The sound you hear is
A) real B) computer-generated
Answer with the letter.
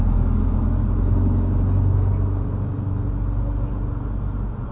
A